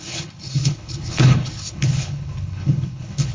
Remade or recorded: remade